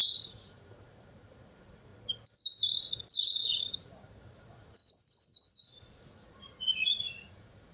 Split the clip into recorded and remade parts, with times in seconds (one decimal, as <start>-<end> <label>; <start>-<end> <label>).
0.0-1.9 remade; 1.9-2.8 recorded; 2.8-4.8 remade; 4.8-5.5 recorded; 5.5-7.7 remade